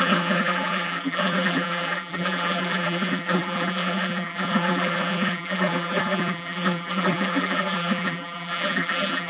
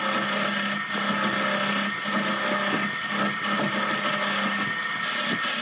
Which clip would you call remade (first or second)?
first